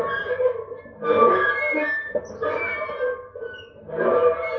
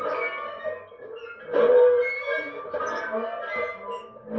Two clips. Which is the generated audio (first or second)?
first